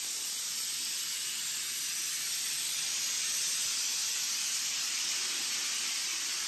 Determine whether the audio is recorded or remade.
recorded